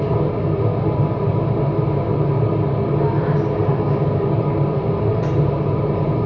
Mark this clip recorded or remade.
recorded